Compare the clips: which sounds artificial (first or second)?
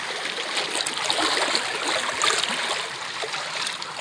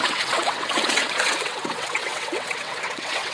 second